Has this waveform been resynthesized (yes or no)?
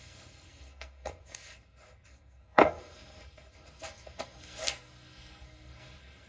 yes